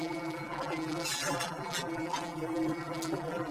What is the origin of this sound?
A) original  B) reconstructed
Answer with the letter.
B